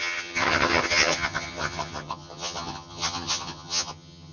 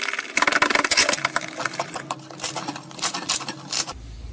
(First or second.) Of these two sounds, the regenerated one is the first